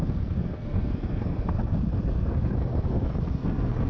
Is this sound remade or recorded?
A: remade